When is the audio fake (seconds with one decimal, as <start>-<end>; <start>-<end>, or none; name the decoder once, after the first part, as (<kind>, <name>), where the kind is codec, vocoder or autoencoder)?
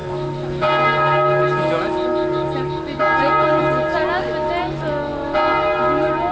none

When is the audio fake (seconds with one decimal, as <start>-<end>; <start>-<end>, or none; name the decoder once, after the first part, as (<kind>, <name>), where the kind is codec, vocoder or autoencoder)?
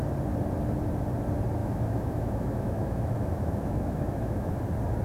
1.6-4.6 (autoencoder, DAC-VAE)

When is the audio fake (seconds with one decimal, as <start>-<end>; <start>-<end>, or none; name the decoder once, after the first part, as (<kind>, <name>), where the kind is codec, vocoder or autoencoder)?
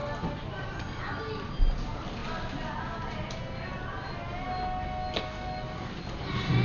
none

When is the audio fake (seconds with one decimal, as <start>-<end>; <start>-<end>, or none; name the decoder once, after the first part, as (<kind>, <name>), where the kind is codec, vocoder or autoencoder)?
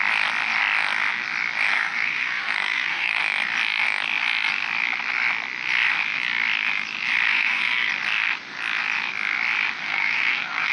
1.7-3.2 (codec, SNAC); 7.3-7.9; 9.8-10.7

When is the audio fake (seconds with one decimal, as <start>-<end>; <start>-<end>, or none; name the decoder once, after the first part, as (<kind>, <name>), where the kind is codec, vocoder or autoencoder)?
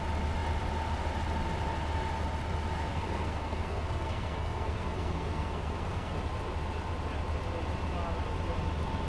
2.9-6.1 (codec, SNAC)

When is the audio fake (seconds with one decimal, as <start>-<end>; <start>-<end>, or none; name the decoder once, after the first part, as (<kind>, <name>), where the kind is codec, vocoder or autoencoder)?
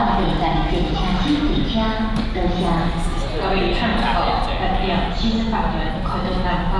none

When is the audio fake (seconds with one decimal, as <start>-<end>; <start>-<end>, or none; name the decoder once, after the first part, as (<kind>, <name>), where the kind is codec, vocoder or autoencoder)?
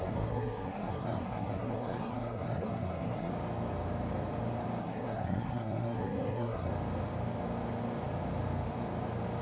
0.0-3.3 (codec, SNAC); 4.8-6.7